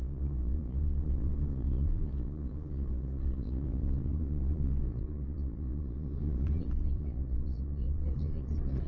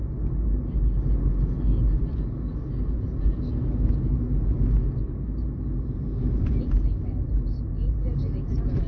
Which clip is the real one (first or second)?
second